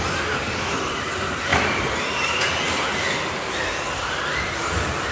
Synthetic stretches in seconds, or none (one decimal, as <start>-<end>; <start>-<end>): none